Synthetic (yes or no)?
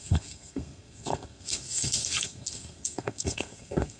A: yes